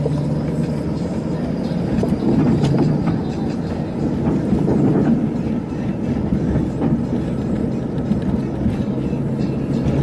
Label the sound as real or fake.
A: real